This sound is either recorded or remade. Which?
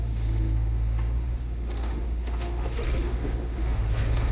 remade